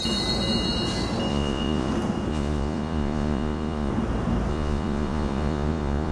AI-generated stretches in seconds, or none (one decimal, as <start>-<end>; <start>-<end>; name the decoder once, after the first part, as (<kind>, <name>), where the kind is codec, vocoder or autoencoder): 1.3-1.9 (vocoder, Vocos); 2.3-3.9; 4.5-6.1